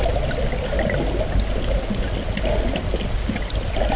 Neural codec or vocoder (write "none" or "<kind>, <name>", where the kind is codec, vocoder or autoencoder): none